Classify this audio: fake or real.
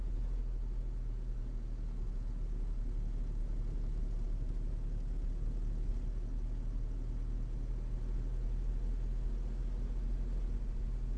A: real